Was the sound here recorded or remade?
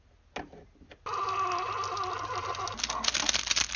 recorded